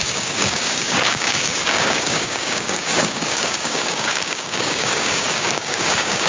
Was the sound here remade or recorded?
remade